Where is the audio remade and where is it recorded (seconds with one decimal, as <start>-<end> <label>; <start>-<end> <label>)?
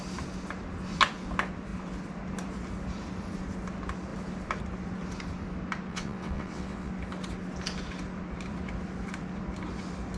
0.0-5.9 recorded; 5.9-6.9 remade; 6.9-10.2 recorded